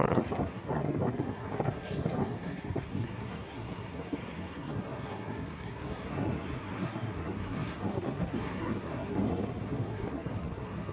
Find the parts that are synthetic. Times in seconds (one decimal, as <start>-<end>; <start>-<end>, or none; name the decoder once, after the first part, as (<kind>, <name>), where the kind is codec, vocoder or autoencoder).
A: 0.0-10.9 (codec, SNAC)